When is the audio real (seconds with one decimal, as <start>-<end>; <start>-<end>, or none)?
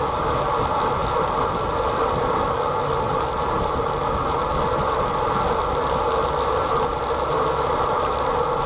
0.0-8.7